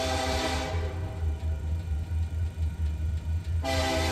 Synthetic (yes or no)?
yes